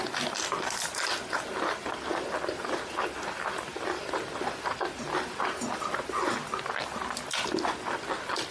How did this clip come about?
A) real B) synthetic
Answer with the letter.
A